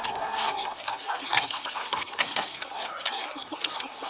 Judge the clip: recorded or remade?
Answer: remade